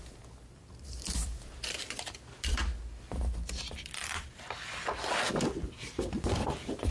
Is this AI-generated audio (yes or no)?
no